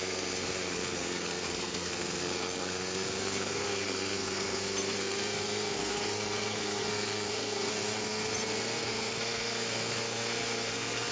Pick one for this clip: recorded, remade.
remade